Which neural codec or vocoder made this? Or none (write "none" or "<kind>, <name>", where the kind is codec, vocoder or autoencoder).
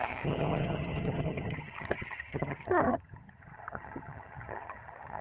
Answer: vocoder, HiFi-GAN